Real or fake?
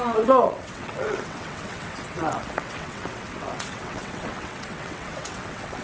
fake